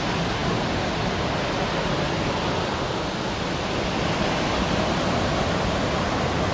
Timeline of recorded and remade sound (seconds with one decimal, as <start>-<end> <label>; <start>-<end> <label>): 0.0-6.5 recorded